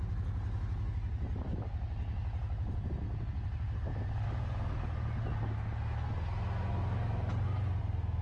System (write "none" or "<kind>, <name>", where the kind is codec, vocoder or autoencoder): none